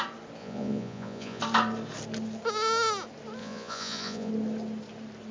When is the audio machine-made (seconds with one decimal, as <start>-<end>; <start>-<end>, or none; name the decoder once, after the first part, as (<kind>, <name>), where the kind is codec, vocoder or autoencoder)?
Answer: 0.4-1.4 (vocoder, Vocos); 3.4-4.3